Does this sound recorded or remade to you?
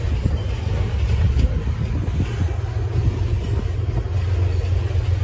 recorded